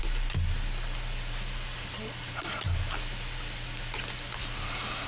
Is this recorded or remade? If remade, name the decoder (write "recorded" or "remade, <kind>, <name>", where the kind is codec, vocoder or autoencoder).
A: recorded